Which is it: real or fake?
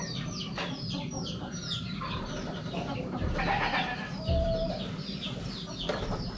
fake